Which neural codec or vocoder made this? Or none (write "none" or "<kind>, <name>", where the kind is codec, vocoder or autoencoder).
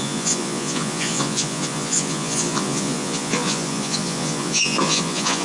vocoder, Vocos